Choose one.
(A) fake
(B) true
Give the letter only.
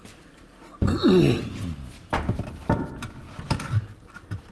B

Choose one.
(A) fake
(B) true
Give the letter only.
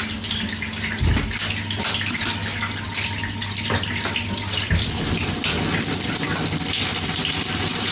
B